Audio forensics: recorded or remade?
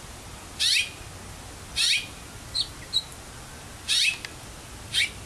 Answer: recorded